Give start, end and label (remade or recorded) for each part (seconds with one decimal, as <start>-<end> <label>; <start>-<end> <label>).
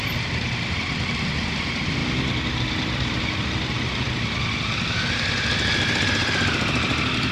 0.0-2.0 recorded; 2.0-5.5 remade; 5.5-7.3 recorded